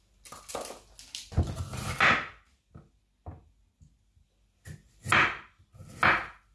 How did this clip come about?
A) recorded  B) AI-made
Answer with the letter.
A